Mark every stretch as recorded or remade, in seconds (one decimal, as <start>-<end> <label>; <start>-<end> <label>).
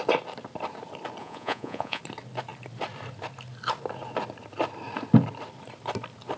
0.0-1.2 recorded; 1.2-2.0 remade; 2.0-6.4 recorded